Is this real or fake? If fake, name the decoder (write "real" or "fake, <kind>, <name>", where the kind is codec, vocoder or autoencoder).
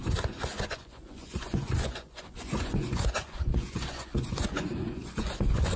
fake, vocoder, Vocos